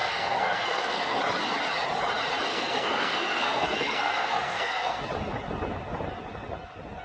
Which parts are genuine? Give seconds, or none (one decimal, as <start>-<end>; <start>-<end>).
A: 1.2-2.5; 5.0-7.0